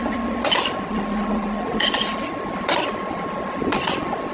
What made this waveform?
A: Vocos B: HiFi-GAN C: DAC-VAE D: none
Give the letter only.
D